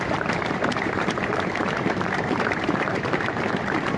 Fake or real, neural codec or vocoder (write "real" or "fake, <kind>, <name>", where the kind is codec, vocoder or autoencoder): fake, vocoder, BigVGAN v2